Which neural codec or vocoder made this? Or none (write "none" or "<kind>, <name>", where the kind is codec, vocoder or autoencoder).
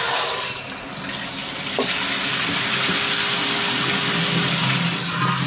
none